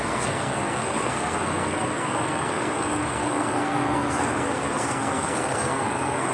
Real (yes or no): no